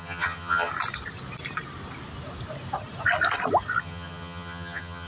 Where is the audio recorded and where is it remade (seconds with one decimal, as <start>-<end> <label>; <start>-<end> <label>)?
0.0-0.7 remade; 0.7-3.8 recorded; 3.8-5.1 remade